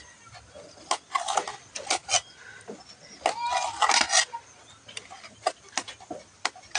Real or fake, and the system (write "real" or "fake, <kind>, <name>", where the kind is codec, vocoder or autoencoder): real